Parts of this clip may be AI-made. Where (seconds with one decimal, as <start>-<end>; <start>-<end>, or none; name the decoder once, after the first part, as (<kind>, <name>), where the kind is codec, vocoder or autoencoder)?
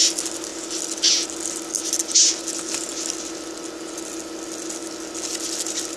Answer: none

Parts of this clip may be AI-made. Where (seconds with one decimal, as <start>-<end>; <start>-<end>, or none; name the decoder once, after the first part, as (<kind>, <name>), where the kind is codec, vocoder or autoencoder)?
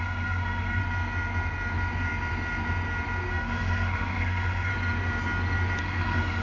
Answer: 0.0-0.8 (codec, SNAC); 3.3-4.7; 5.8-6.4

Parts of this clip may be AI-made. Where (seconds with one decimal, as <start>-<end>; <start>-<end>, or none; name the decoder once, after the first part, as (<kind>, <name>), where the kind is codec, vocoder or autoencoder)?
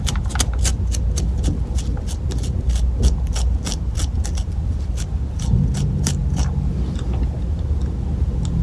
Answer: none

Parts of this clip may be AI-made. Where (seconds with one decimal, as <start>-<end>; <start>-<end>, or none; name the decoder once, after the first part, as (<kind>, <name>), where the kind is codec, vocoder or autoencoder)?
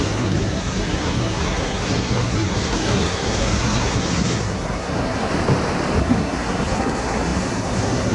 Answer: 0.0-5.3 (codec, SNAC); 6.0-8.1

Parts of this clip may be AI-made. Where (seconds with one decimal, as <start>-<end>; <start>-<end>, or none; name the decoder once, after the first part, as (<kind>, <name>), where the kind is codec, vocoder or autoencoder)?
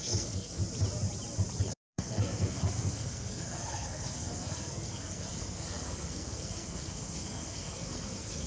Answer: 0.0-0.6 (codec, SNAC); 1.6-8.5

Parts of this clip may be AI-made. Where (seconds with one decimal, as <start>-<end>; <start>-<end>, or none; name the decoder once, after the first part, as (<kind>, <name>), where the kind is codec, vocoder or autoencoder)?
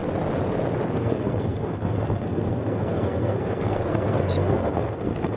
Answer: 1.0-5.4 (codec, SNAC)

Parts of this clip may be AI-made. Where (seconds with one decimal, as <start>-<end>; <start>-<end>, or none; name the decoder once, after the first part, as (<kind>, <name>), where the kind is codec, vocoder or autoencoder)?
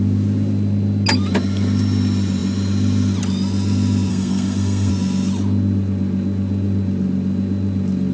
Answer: 4.1-4.9 (codec, SNAC)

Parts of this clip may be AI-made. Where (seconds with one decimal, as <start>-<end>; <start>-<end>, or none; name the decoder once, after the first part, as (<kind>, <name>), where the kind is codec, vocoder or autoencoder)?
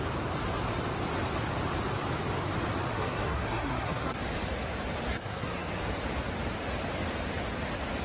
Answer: 2.9-4.2 (codec, SNAC); 5.1-5.7